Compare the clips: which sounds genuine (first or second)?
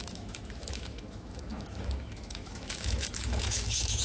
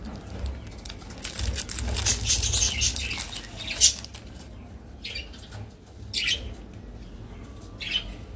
second